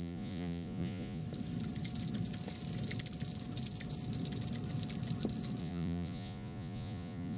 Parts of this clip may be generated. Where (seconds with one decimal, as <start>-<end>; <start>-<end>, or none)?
0.0-1.2; 5.6-7.4